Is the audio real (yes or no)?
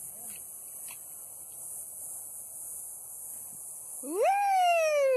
yes